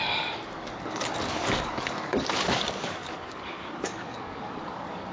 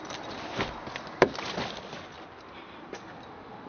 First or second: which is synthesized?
first